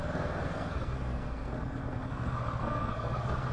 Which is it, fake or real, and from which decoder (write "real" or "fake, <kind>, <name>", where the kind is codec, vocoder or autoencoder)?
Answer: fake, codec, SNAC